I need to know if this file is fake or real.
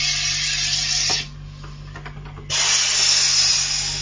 real